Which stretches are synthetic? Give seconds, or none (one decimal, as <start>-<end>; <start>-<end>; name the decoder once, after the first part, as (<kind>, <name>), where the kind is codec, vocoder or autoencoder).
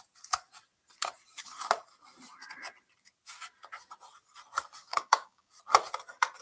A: 4.8-5.5 (codec, DAC)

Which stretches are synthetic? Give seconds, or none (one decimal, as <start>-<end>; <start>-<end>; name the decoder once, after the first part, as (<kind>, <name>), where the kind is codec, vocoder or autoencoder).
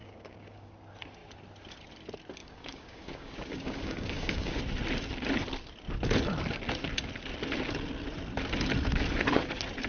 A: 0.0-0.7 (codec, DAC); 2.4-4.6